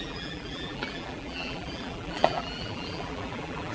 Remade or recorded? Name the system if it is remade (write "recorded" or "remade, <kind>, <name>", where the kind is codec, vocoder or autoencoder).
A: remade, vocoder, BigVGAN v2